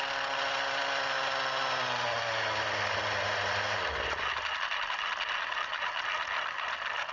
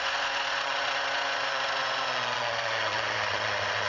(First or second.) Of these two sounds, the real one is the first